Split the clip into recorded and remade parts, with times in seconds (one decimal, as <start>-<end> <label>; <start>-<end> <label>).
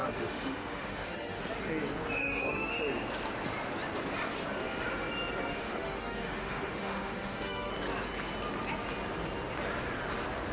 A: 0.0-1.4 remade; 1.4-2.2 recorded; 2.2-2.8 remade; 2.8-5.5 recorded; 5.5-7.7 remade; 7.7-10.5 recorded